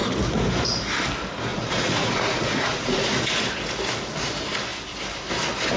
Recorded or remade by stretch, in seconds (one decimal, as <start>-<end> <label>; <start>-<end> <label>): 0.0-1.5 recorded; 1.5-3.2 remade; 3.2-5.8 recorded